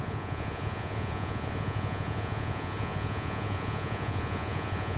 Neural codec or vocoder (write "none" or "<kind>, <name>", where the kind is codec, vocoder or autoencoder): vocoder, Vocos